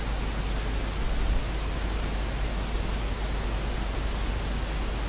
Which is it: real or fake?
real